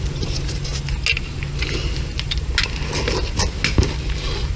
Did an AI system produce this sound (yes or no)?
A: no